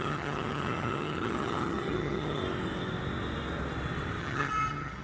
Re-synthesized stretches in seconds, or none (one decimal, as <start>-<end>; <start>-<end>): 0.0-2.4; 4.2-5.0